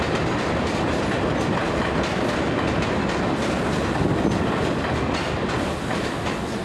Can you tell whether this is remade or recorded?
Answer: recorded